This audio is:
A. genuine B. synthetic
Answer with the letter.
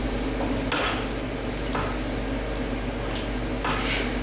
A